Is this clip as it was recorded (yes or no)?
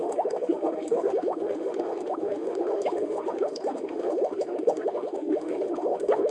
no